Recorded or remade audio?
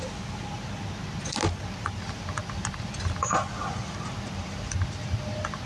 recorded